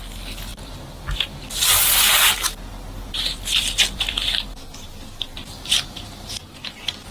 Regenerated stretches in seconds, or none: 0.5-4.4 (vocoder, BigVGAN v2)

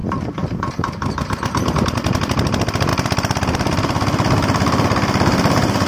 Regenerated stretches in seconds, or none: 0.0-1.3 (vocoder, BigVGAN v2); 2.9-5.9

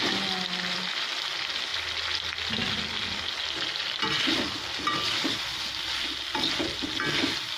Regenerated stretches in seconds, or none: none

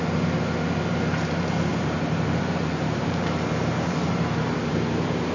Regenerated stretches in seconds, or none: 1.7-5.3 (vocoder, BigVGAN v2)

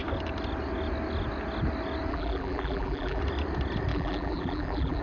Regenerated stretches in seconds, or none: 2.1-3.2 (vocoder, BigVGAN v2); 3.9-5.0

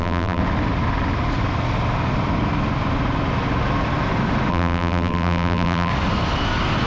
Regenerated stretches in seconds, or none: 0.0-0.4 (vocoder, BigVGAN v2); 4.5-5.9

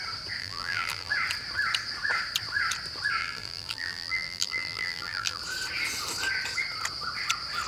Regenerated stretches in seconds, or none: 0.4-1.1 (vocoder, BigVGAN v2); 3.2-5.4

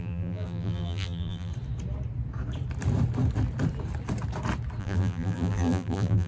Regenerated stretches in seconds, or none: 0.0-1.5 (vocoder, BigVGAN v2); 4.8-6.3